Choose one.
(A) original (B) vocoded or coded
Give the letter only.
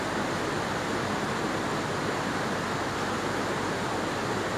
A